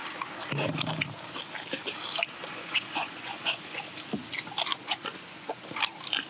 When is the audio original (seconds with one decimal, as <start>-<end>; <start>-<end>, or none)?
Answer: 0.0-2.4; 3.8-4.7; 5.5-6.3